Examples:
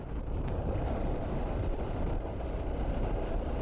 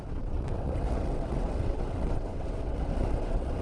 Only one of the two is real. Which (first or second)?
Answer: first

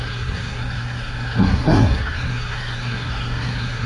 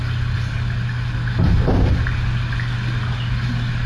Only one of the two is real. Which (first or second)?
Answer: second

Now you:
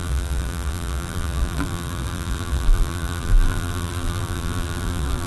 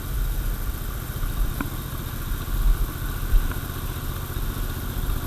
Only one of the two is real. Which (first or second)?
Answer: second